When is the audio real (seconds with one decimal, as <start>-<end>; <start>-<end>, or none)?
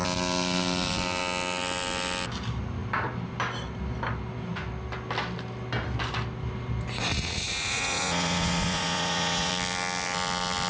0.0-7.1; 9.5-10.7